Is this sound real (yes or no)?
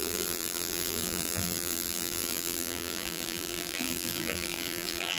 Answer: no